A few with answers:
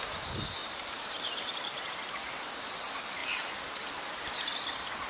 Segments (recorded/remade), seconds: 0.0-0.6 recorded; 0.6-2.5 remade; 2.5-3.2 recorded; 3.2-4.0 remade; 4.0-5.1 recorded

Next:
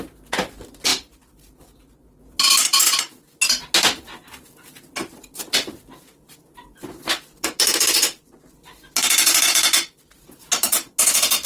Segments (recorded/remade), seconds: 0.0-0.9 recorded; 0.9-2.2 remade; 2.2-11.5 recorded

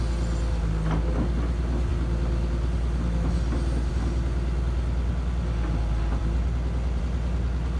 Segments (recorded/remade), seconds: 0.0-7.8 recorded